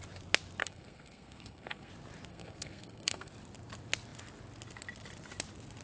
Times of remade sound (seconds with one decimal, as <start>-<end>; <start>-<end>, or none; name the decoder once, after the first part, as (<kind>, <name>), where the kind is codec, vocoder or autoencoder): 0.6-1.9 (codec, SNAC); 2.3-3.3